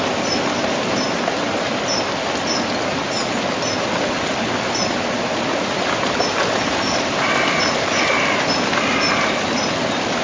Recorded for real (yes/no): yes